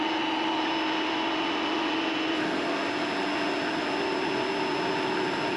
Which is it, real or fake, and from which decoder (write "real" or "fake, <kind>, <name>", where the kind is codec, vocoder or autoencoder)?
real